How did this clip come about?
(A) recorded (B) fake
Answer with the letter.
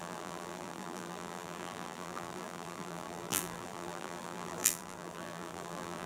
B